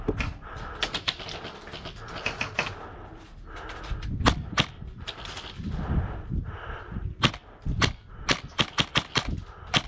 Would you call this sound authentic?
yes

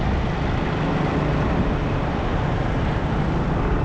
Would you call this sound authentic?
yes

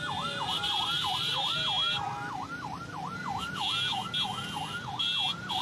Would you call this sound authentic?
yes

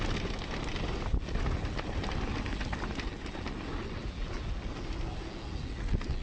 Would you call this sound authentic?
yes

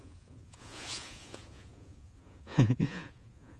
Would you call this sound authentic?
no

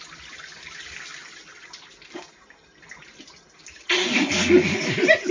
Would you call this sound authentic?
yes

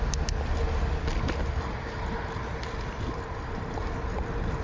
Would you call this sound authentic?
yes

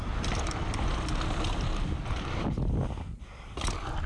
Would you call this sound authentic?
yes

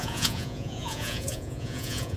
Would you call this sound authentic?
no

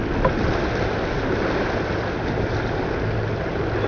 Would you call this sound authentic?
yes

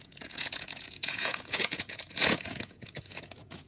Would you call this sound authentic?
no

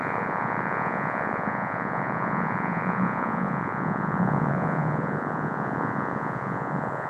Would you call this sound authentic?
no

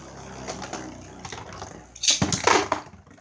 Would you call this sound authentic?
yes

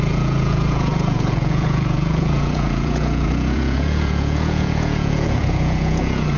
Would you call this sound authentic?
no